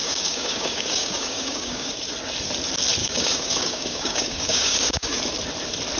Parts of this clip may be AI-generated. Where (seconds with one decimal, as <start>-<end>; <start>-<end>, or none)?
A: 0.0-1.9; 3.0-5.2